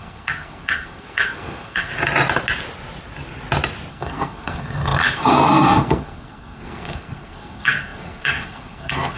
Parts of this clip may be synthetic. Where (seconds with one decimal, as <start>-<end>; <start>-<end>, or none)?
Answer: 0.0-1.9; 3.9-9.2